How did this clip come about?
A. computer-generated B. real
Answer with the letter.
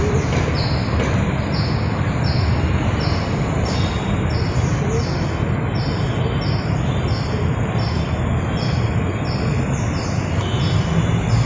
B